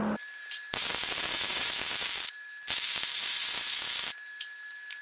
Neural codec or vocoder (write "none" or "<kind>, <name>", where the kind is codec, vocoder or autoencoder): none